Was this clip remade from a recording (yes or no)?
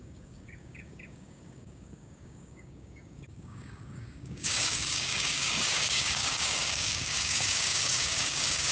yes